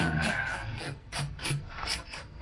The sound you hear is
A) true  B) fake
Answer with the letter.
B